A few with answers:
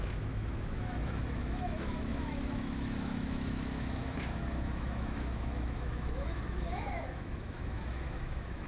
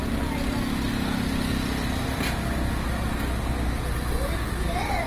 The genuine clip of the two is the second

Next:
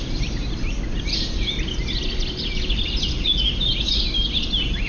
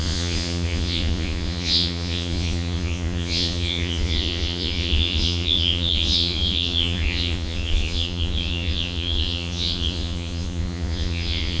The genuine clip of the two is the first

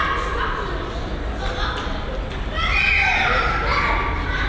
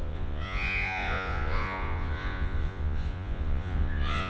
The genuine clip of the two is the first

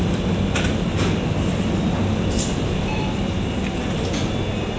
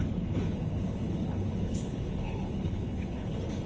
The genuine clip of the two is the first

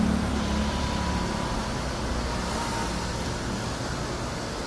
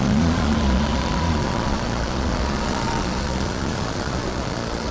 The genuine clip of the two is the first